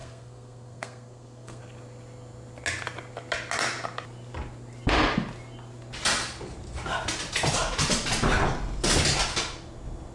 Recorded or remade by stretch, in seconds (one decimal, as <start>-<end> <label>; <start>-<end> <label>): 0.0-1.6 remade; 1.6-10.1 recorded